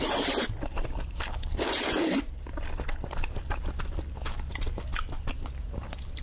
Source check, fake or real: real